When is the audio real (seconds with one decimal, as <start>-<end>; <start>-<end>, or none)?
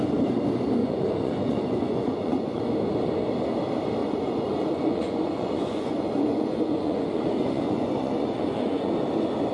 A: 0.0-0.8; 2.6-4.0; 8.9-9.5